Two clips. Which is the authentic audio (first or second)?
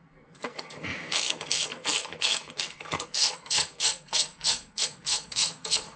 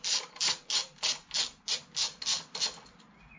second